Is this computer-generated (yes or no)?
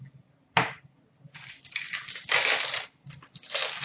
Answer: no